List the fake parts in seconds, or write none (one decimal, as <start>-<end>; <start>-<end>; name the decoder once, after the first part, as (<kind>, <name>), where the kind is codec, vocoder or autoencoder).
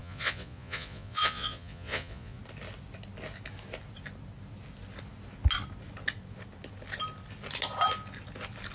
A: 0.0-2.4 (vocoder, Vocos)